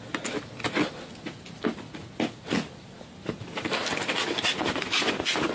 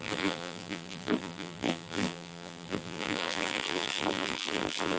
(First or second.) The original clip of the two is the first